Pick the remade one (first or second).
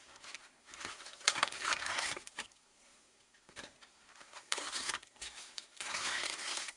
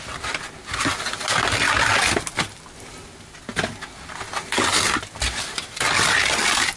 first